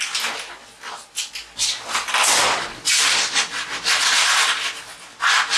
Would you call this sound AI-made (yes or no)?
no